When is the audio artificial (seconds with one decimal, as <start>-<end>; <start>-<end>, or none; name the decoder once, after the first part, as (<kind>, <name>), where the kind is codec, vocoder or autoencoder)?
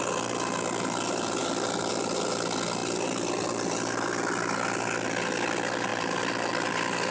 none